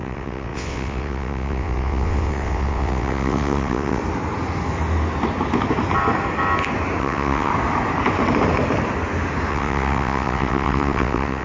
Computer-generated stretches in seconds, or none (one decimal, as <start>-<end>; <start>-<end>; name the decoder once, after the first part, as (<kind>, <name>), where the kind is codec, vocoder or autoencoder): 0.0-4.0 (vocoder, WaveNeXt); 7.0-7.5; 9.5-11.4